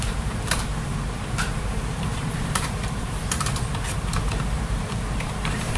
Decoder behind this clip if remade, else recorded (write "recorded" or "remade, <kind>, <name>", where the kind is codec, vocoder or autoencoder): remade, vocoder, BigVGAN v2